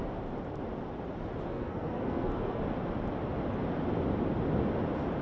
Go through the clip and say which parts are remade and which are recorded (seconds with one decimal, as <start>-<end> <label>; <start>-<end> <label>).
0.0-1.5 recorded; 1.5-2.6 remade; 2.6-5.2 recorded